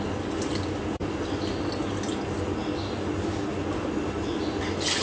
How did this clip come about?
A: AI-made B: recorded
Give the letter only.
B